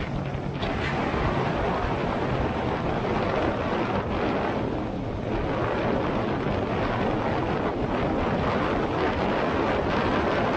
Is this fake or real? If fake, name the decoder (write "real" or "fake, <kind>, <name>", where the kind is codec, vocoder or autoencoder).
real